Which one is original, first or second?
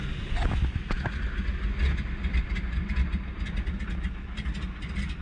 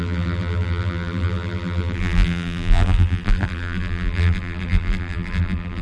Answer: first